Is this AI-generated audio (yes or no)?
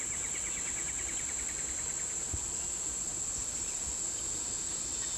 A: no